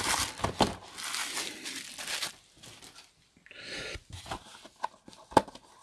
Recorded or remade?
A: recorded